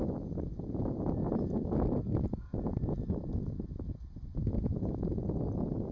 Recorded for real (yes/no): yes